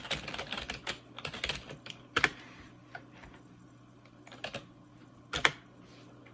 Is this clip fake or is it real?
real